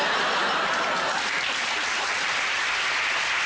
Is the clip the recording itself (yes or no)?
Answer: yes